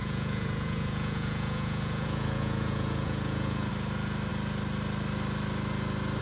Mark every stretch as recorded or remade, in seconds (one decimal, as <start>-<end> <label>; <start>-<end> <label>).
0.0-3.7 remade; 3.7-6.2 recorded